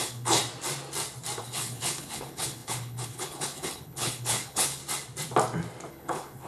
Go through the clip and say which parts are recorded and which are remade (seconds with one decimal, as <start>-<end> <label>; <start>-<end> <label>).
0.0-0.4 remade; 0.4-1.4 recorded; 1.4-4.8 remade; 4.8-5.9 recorded; 5.9-6.5 remade